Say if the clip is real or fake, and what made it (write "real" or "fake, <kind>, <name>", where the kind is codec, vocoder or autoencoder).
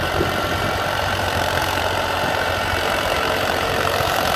fake, vocoder, BigVGAN v2